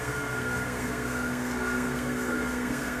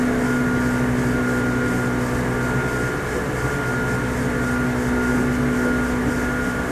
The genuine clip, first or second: second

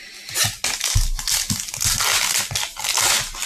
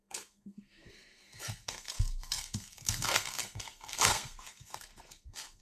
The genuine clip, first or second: first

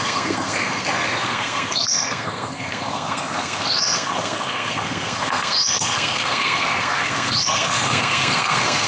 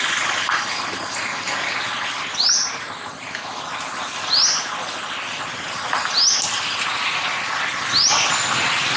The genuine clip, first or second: second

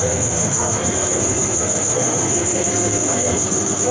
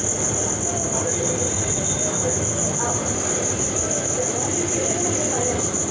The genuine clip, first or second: second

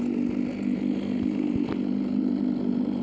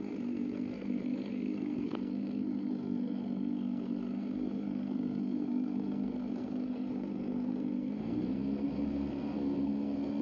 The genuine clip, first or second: first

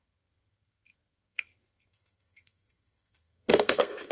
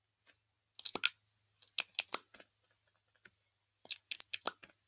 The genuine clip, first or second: second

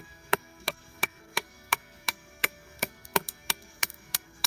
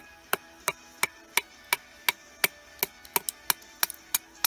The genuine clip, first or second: second